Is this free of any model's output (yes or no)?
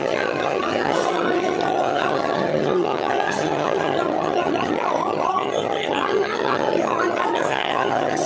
no